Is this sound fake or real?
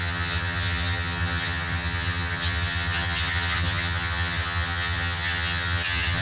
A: fake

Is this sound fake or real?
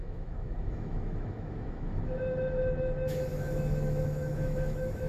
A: fake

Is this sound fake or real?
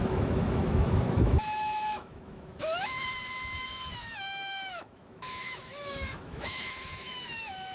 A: fake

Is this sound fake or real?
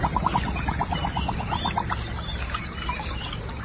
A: real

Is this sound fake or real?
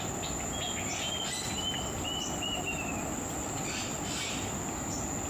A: real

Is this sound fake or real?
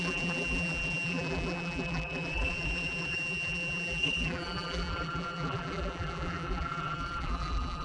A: fake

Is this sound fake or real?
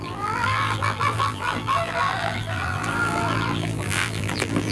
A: fake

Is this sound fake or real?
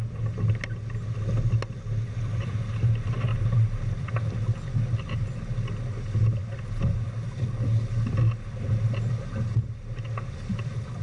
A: real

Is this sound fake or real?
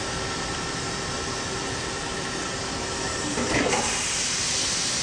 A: fake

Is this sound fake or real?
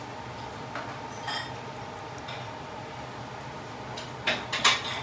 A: real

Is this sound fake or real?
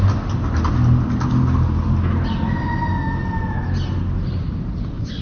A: real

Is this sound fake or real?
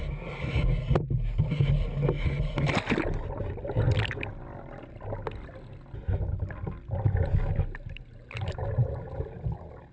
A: real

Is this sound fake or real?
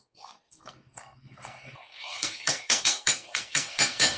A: fake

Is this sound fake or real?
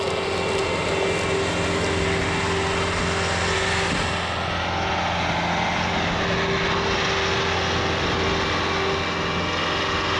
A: real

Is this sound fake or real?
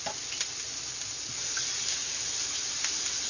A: real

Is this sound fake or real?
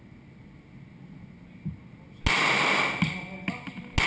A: real